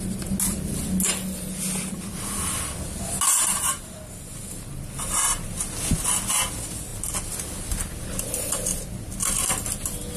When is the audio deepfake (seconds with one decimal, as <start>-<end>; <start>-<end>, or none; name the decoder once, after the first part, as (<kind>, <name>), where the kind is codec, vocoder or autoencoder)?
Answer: none